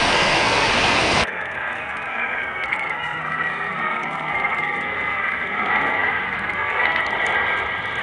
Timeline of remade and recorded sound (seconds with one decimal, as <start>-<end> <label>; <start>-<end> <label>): 0.0-7.0 remade; 7.0-8.0 recorded